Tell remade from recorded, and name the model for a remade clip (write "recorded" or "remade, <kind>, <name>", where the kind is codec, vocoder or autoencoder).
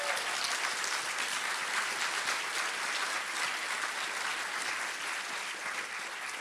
recorded